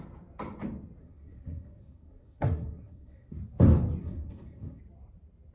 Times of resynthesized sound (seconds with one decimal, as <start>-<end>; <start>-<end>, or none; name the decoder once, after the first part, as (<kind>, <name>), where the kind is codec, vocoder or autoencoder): 1.0-3.4 (codec, SNAC); 4.0-4.8